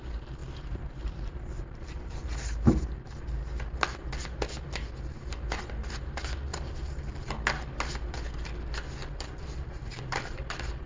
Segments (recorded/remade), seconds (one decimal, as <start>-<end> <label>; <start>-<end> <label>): 0.0-0.4 recorded; 0.4-2.3 remade; 2.3-6.5 recorded; 6.5-7.3 remade; 7.3-9.0 recorded; 9.0-10.4 remade; 10.4-10.9 recorded